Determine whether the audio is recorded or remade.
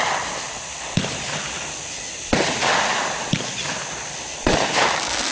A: recorded